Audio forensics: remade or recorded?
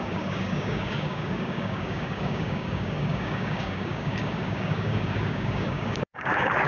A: remade